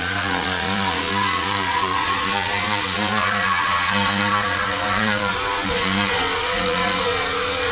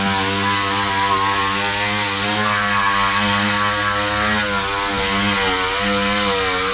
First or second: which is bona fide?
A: second